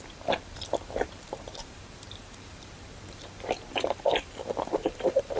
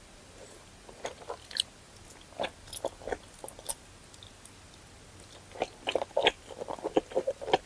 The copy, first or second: first